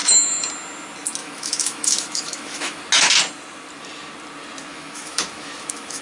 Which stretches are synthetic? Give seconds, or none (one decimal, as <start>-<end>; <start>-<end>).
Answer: 0.0-0.5; 1.2-2.8; 4.7-6.0

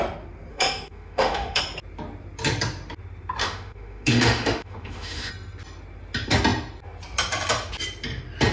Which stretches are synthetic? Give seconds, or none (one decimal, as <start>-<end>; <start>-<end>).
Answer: 0.5-1.6; 3.4-5.3